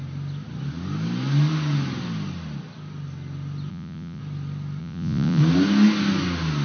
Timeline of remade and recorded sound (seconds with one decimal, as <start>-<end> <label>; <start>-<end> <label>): 0.0-3.7 recorded; 3.7-4.2 remade; 4.2-4.8 recorded; 4.8-5.4 remade; 5.4-6.6 recorded